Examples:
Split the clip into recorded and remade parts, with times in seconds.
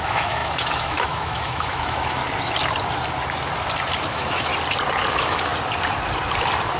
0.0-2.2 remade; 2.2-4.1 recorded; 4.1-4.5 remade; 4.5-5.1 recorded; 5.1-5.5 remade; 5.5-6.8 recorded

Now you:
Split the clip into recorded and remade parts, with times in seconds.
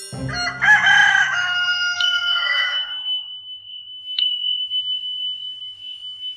0.0-1.0 recorded; 1.0-4.8 remade; 4.8-5.6 recorded; 5.6-6.4 remade